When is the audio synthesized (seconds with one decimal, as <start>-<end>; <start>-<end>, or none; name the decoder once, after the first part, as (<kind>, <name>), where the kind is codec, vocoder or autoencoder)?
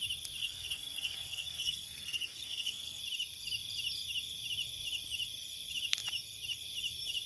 0.4-3.0 (codec, SNAC)